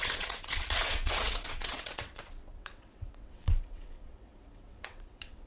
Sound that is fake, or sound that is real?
fake